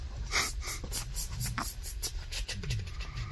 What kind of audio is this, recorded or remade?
recorded